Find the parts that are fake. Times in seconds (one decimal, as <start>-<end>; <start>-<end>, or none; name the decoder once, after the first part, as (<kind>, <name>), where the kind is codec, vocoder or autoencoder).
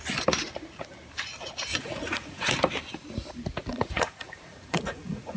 1.7-2.5 (vocoder, Vocos); 3.7-5.4